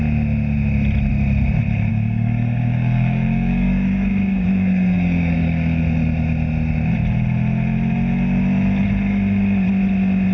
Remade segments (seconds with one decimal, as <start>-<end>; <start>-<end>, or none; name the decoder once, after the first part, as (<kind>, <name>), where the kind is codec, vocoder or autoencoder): 1.9-5.8 (codec, DAC)

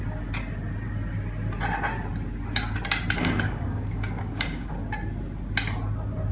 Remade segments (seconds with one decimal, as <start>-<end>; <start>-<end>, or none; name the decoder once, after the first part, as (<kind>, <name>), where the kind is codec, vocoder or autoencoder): 3.2-4.7 (codec, DAC)

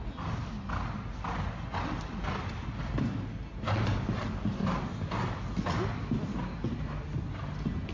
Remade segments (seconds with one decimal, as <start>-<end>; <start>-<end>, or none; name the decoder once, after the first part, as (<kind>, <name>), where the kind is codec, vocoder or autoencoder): none